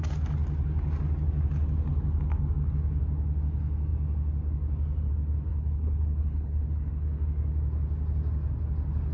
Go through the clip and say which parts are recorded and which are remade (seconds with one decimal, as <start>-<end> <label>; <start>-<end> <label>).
0.0-5.5 recorded; 5.5-6.9 remade; 6.9-9.1 recorded